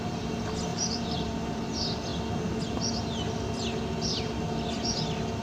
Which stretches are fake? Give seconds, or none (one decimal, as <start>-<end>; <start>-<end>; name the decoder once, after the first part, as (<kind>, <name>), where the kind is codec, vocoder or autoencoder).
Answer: 0.7-1.6 (vocoder, BigVGAN v2)